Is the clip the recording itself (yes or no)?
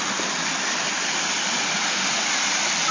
yes